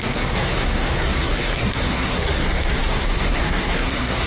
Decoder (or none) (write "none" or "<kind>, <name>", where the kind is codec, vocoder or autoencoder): codec, SNAC